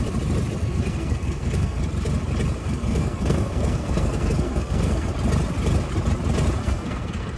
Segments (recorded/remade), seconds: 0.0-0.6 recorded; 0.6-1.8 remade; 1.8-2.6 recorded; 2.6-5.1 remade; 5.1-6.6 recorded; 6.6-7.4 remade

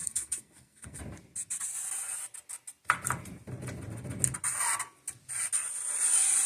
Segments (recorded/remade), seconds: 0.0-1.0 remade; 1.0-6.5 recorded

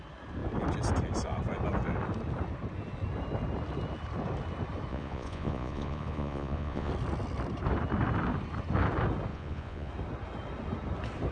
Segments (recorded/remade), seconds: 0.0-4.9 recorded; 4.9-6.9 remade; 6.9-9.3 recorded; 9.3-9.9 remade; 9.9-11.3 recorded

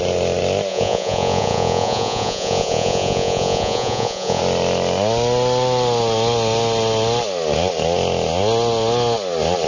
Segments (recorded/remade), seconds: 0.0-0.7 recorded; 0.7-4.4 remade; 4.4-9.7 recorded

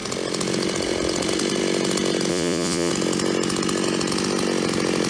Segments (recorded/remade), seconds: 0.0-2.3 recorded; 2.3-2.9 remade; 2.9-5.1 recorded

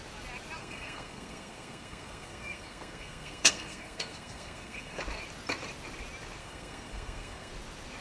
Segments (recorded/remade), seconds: 0.0-0.6 recorded; 0.6-5.0 remade; 5.0-6.4 recorded; 6.4-7.5 remade; 7.5-8.0 recorded

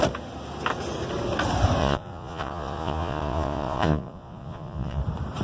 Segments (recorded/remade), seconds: 0.0-1.8 recorded; 1.8-5.0 remade; 5.0-5.4 recorded